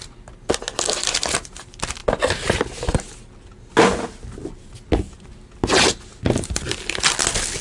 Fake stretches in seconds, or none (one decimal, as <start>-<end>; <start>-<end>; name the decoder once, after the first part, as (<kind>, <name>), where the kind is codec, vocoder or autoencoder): none